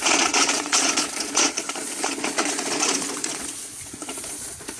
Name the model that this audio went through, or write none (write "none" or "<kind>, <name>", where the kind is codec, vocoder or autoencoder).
vocoder, Vocos